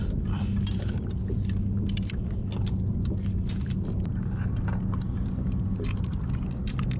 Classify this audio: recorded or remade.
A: recorded